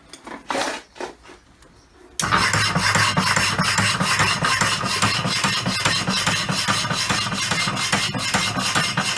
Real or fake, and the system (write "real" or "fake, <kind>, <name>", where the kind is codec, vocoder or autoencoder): real